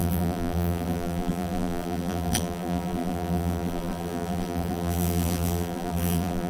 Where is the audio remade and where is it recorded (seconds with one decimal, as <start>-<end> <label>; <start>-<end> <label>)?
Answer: 0.0-6.5 remade